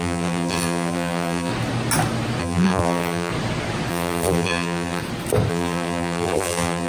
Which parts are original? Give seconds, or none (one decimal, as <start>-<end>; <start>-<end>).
1.5-2.4; 3.3-3.9; 5.0-5.5